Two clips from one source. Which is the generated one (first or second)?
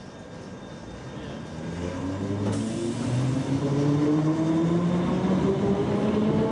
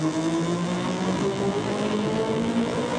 second